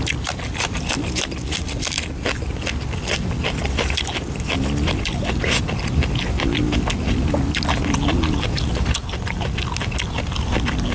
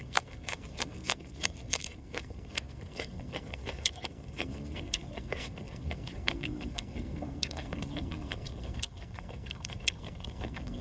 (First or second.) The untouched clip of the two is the first